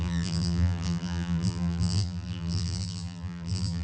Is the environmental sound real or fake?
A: fake